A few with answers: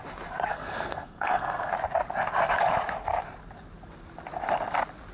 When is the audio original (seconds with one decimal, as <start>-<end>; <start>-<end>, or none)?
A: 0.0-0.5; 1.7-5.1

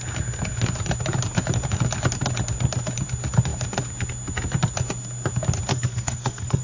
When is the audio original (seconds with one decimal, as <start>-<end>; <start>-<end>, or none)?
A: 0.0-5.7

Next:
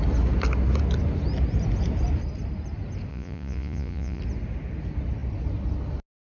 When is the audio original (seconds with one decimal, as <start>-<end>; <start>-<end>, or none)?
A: 0.0-3.1; 4.2-6.2

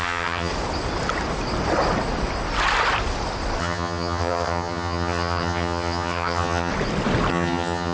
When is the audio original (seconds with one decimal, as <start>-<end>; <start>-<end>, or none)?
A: 0.5-3.6; 6.7-7.3

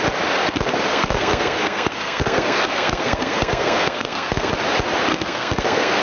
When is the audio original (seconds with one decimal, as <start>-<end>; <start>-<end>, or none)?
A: 0.0-0.9; 4.5-5.1

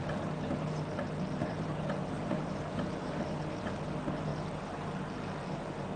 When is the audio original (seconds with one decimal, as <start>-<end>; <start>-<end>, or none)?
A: 0.0-1.4; 3.6-6.0

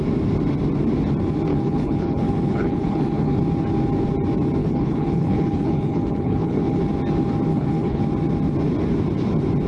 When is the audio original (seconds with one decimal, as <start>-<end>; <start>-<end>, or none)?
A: 0.0-1.5; 3.4-4.6; 6.8-7.5; 8.0-9.7

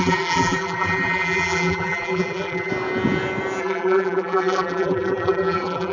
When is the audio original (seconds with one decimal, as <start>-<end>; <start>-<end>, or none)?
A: 2.7-3.6